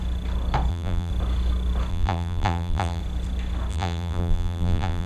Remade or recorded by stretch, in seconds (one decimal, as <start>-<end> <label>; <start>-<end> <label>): 0.0-0.7 recorded; 0.7-1.1 remade; 1.1-1.9 recorded; 1.9-3.0 remade; 3.0-3.7 recorded; 3.7-5.1 remade